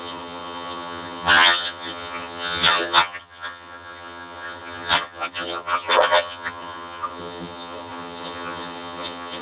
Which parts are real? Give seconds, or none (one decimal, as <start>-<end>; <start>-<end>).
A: none